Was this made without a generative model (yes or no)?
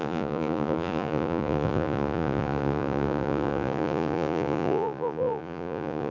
no